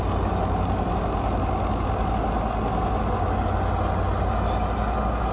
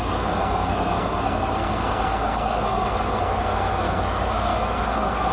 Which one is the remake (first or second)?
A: second